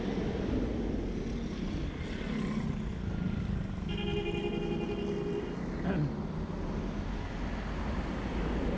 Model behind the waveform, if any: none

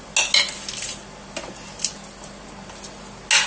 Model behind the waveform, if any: none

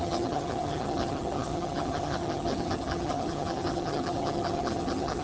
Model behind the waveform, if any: vocoder, HiFi-GAN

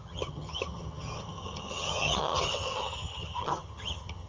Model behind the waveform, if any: vocoder, HiFi-GAN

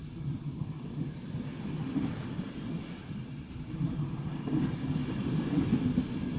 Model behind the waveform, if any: none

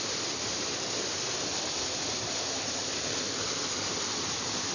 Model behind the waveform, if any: none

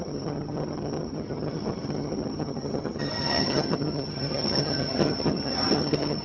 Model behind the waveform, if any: vocoder, HiFi-GAN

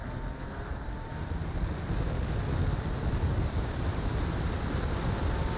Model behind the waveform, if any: none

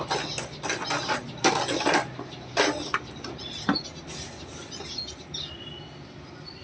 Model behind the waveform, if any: none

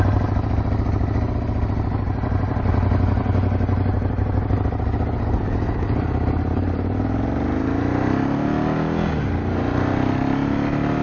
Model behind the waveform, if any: none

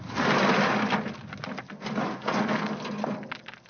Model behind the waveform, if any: none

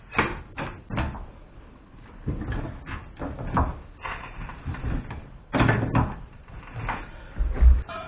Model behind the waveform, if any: none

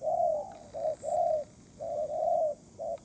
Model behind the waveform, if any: none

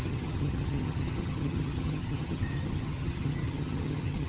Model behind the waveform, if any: vocoder, HiFi-GAN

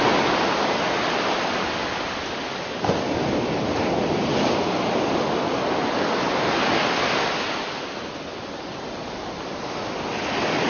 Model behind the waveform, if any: none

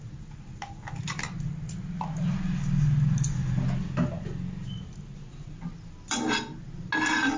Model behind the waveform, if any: none